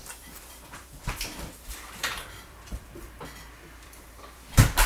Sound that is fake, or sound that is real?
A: fake